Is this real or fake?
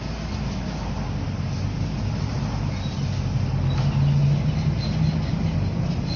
real